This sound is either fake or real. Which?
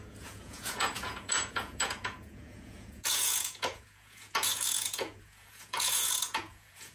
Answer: fake